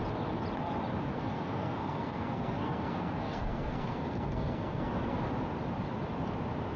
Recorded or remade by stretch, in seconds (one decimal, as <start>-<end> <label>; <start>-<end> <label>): 0.0-1.1 recorded; 1.1-5.2 remade; 5.2-6.8 recorded